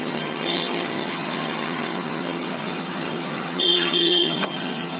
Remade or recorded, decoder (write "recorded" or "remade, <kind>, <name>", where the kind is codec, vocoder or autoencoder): remade, vocoder, HiFi-GAN